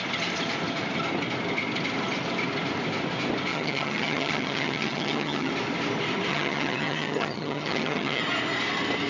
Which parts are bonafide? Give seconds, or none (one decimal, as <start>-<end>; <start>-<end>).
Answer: 0.0-3.5; 5.5-6.3; 8.2-9.1